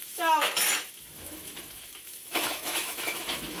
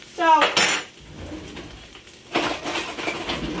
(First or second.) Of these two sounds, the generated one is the first